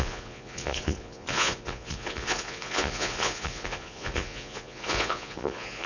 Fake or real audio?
fake